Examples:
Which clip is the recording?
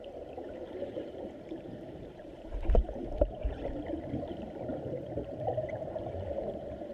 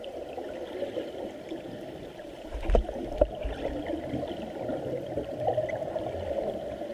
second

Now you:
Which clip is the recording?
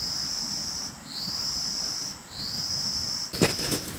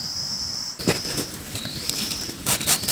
first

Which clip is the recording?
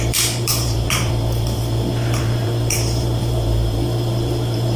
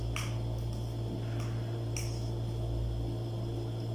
second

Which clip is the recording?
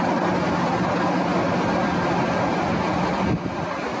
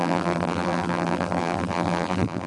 first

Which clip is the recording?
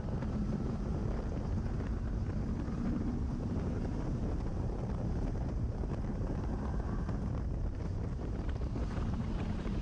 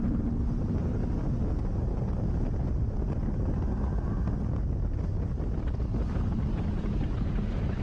second